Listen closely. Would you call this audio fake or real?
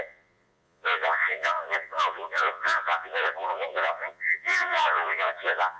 fake